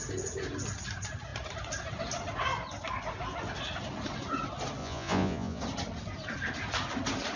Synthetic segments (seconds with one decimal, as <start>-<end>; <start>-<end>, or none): 4.8-5.6